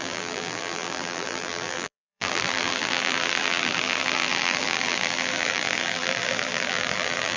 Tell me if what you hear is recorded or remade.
remade